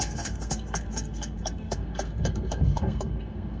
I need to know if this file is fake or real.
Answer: fake